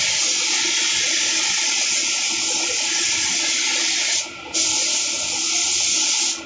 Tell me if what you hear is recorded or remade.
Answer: recorded